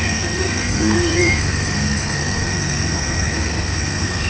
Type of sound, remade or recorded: remade